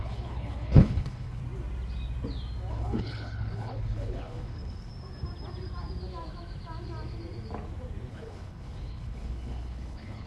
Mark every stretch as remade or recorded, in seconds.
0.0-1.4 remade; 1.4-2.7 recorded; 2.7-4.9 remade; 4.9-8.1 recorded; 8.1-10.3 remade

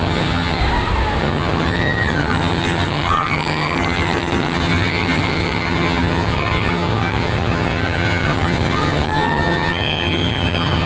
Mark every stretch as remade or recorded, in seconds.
0.0-0.6 remade; 0.6-1.2 recorded; 1.2-10.9 remade

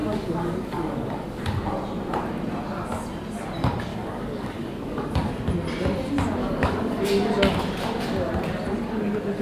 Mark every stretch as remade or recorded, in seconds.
0.0-1.4 remade; 1.4-3.9 recorded; 3.9-5.3 remade; 5.3-6.4 recorded; 6.4-7.0 remade; 7.0-9.4 recorded

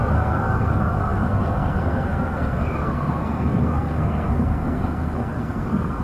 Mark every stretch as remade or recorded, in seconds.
0.0-6.0 remade

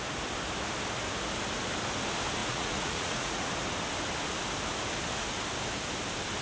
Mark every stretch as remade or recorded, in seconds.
0.0-2.4 recorded; 2.4-3.5 remade; 3.5-6.4 recorded